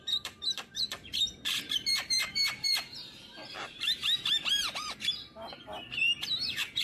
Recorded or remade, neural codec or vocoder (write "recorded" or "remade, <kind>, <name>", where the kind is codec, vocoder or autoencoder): remade, vocoder, BigVGAN v2